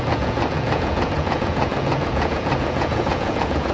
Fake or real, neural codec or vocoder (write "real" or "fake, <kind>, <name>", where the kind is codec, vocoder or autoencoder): fake, vocoder, Vocos